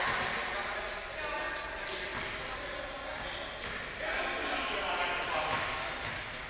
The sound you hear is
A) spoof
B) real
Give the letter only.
B